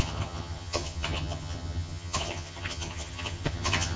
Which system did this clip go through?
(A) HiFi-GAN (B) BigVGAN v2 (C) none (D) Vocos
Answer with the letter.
A